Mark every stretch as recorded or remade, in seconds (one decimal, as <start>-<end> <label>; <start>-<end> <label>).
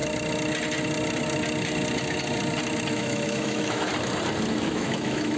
0.0-2.9 recorded; 2.9-3.9 remade; 3.9-4.5 recorded; 4.5-5.4 remade